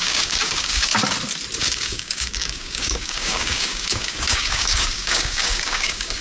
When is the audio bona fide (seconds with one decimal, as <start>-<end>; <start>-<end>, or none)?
0.9-1.6